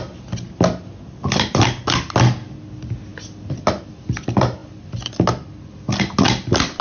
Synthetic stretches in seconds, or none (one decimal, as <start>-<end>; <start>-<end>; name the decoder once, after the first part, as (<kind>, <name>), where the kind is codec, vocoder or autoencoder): none